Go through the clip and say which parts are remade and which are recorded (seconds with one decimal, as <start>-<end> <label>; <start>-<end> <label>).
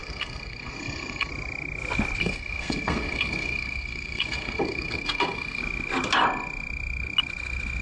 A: 0.0-1.3 remade; 1.3-2.2 recorded; 2.2-5.6 remade; 5.6-7.8 recorded